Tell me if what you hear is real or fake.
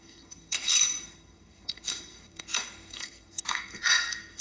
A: fake